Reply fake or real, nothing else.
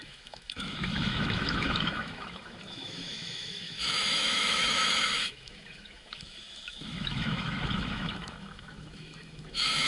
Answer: fake